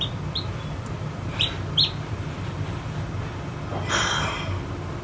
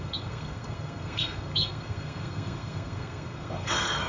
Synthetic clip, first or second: second